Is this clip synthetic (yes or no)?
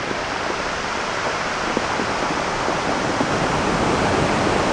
no